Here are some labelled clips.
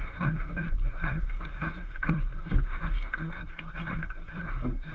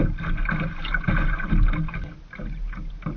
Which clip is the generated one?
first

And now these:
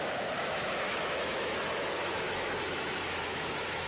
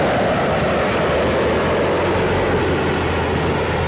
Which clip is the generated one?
first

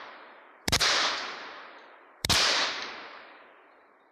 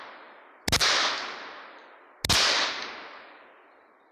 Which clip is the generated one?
first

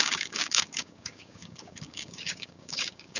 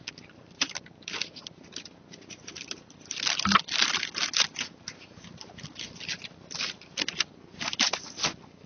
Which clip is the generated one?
first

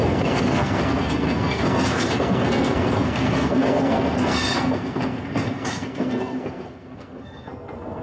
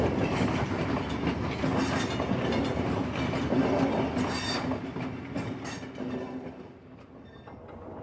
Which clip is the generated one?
first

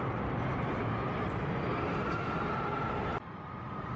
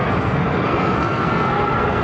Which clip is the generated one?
second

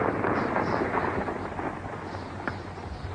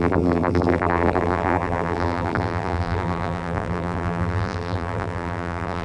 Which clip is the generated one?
second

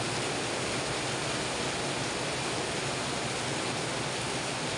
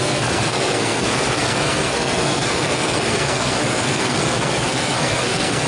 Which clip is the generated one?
second